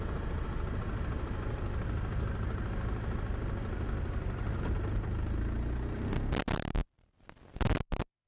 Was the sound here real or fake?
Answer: real